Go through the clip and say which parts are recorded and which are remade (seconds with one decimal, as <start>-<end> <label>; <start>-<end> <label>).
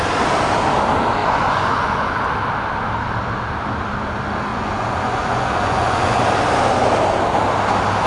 0.0-1.2 recorded; 1.2-2.2 remade; 2.2-4.5 recorded; 4.5-6.2 remade; 6.2-8.1 recorded